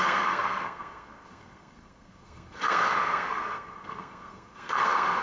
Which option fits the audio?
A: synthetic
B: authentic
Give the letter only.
A